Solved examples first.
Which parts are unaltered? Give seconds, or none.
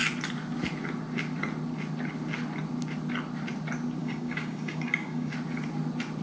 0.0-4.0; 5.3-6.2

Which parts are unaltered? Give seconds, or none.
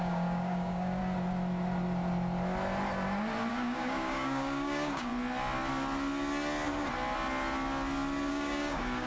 1.0-3.5; 5.1-8.3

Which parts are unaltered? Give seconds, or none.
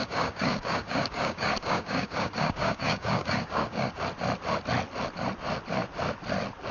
4.0-6.7